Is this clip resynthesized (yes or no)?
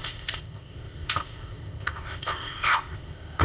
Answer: yes